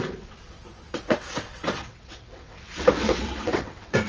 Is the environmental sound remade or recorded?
remade